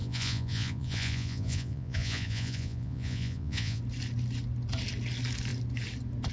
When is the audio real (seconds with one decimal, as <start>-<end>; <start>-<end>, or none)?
3.8-6.3